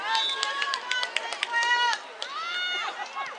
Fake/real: real